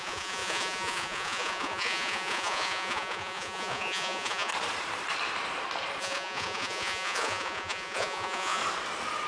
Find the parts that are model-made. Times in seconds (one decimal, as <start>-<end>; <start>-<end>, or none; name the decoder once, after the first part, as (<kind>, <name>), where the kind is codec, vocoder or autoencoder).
0.0-4.5 (vocoder, Vocos); 6.0-8.6